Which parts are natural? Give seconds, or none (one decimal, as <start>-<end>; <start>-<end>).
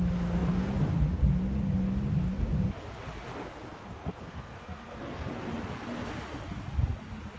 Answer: 0.0-3.8; 5.5-7.4